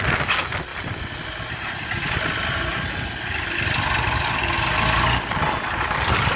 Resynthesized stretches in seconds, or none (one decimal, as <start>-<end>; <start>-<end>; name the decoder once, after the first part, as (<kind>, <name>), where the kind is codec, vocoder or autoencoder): none